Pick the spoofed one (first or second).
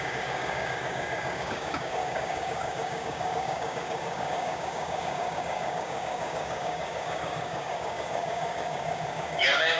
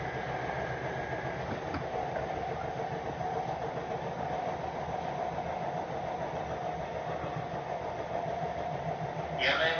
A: first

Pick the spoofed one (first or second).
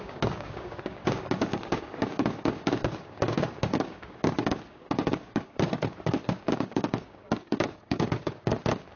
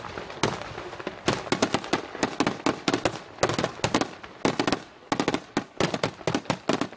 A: first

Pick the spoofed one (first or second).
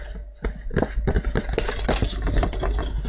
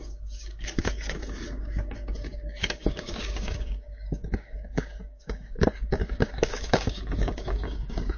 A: second